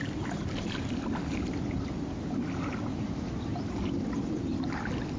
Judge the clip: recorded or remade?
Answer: recorded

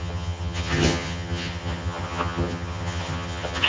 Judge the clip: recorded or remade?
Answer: remade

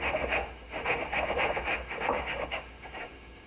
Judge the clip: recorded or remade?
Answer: remade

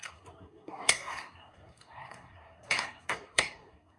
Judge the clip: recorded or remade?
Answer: remade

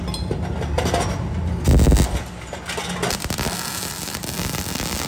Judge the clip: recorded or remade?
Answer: recorded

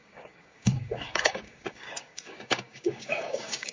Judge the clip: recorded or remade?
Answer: remade